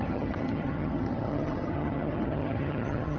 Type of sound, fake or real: fake